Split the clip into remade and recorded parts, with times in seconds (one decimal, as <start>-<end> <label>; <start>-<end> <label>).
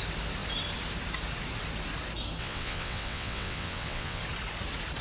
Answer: 0.0-2.4 recorded; 2.4-4.2 remade; 4.2-5.0 recorded